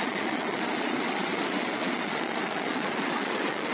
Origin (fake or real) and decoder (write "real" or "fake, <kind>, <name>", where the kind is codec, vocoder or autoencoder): fake, vocoder, Vocos